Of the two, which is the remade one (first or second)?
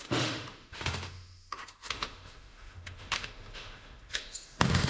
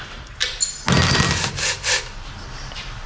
first